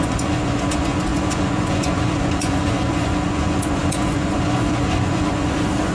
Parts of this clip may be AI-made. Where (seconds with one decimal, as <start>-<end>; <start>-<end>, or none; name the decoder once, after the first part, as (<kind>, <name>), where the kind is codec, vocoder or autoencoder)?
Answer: 0.0-5.9 (vocoder, Vocos)